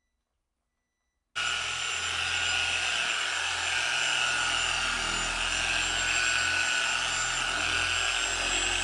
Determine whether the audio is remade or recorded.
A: recorded